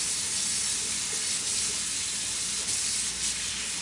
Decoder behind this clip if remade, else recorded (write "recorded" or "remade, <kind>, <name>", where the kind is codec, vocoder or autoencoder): recorded